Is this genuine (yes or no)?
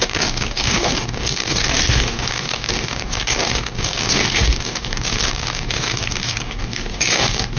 no